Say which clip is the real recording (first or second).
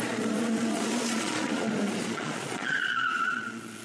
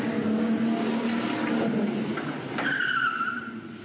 second